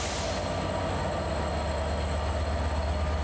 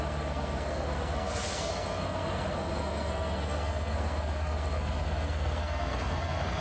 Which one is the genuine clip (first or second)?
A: first